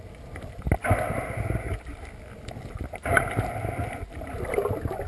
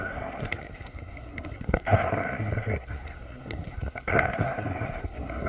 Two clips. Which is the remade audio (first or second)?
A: second